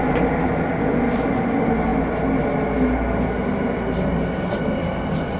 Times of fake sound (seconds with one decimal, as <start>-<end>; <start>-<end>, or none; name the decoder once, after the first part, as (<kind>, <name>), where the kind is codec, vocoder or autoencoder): none